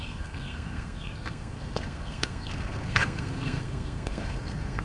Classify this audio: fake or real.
fake